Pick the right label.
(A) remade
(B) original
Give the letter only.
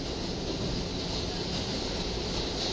B